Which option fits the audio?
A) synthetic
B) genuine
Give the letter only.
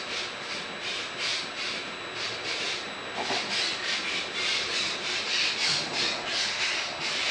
B